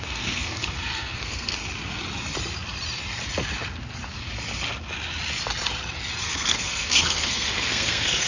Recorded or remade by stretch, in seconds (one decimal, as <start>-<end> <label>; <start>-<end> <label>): 0.0-1.5 remade; 1.5-6.2 recorded; 6.2-8.3 remade